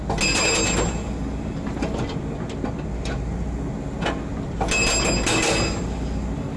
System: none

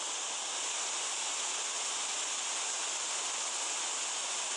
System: none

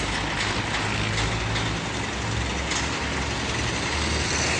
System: none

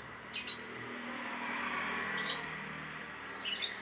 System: none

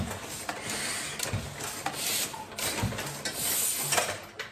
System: none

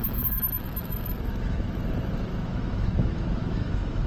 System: autoencoder, DAC-VAE